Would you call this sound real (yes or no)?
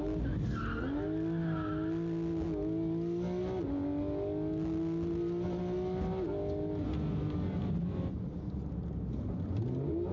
yes